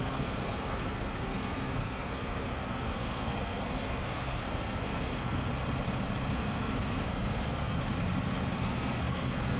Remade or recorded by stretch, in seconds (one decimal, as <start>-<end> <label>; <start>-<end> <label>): 0.0-5.5 remade; 5.5-6.3 recorded; 6.3-7.8 remade; 7.8-8.6 recorded; 8.6-9.6 remade